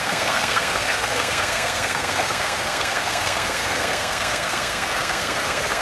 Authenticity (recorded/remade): remade